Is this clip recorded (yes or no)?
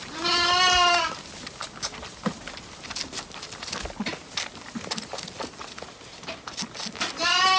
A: yes